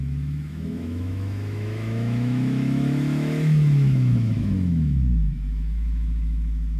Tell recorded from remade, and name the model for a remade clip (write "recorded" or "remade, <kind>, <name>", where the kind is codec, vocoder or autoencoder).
remade, autoencoder, DAC-VAE